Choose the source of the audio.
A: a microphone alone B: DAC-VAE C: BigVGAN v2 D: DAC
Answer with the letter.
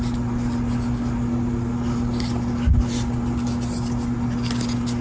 A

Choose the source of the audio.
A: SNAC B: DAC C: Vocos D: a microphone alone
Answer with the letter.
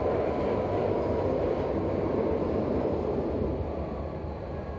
D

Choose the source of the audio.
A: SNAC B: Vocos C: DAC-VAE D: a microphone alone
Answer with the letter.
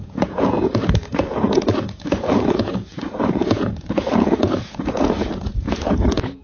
B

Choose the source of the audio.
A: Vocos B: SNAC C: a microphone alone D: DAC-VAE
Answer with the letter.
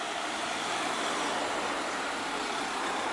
C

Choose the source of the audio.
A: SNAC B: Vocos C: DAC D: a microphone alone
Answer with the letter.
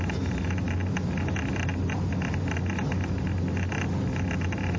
D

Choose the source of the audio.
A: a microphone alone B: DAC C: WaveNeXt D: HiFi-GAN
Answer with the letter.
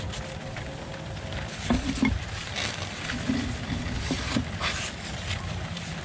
A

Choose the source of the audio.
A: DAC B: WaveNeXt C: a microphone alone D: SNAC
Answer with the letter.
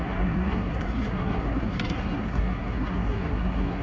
D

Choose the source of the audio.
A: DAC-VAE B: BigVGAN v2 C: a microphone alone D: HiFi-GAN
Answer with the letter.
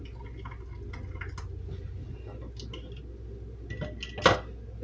C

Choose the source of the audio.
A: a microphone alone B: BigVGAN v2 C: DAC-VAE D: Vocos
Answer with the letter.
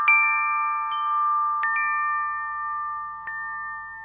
A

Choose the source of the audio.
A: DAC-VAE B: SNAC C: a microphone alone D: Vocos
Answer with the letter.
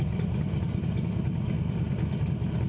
C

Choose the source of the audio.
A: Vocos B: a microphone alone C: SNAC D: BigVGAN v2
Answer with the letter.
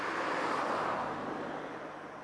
D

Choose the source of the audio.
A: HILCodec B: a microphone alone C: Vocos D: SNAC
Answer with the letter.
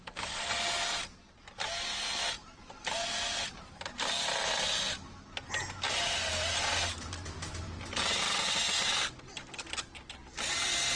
B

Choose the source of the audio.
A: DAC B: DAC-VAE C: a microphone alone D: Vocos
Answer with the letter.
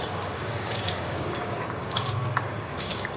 A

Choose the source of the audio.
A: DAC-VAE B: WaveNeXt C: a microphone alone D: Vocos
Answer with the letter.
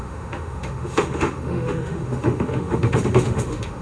A